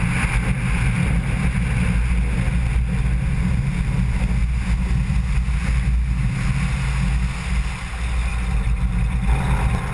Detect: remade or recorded recorded